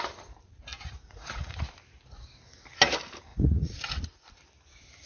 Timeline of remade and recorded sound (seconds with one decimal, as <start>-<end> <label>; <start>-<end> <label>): 0.0-0.7 recorded; 0.7-1.7 remade; 1.7-3.3 recorded; 3.3-4.0 remade; 4.0-5.1 recorded